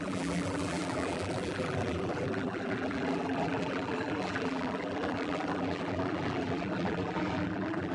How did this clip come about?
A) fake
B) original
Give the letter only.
A